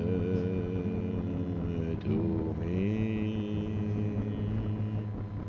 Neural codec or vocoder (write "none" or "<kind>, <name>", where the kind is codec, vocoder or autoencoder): none